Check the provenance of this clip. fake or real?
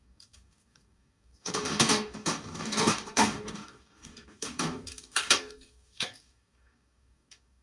fake